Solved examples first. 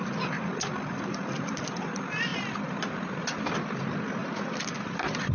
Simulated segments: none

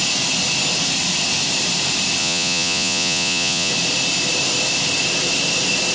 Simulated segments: 2.2-3.7 (vocoder, Vocos)

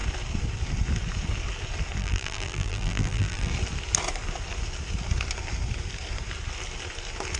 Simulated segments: 2.0-3.5 (vocoder, BigVGAN v2)

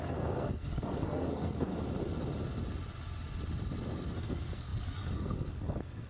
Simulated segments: 0.0-1.7 (codec, SNAC); 4.2-6.1